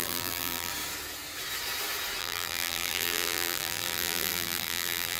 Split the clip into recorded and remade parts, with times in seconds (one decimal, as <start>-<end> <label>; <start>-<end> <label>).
0.0-0.7 remade; 0.7-2.2 recorded; 2.2-5.2 remade